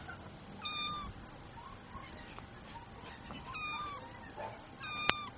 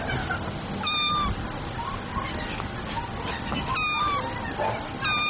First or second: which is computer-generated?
first